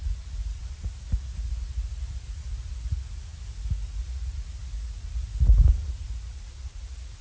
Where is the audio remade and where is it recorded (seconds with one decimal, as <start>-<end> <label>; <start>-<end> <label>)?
0.0-7.2 recorded